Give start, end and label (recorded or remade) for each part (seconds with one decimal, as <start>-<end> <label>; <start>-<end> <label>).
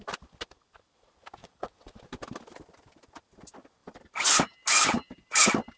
0.0-1.4 recorded; 1.4-2.0 remade; 2.0-5.8 recorded